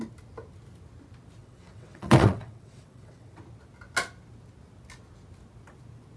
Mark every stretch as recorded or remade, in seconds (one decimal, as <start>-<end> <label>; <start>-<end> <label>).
0.0-1.4 recorded; 1.4-3.4 remade; 3.4-6.2 recorded